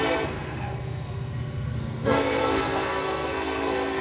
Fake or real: fake